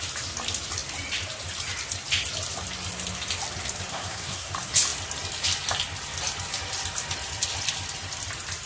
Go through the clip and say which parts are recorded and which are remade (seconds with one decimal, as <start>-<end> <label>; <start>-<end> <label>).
0.0-3.9 recorded; 3.9-4.5 remade; 4.5-8.7 recorded